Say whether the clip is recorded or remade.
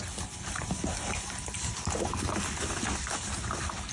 recorded